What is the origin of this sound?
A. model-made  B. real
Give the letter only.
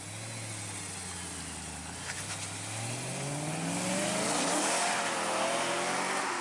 B